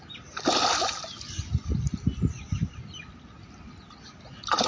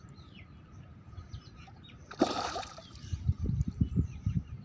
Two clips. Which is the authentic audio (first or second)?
first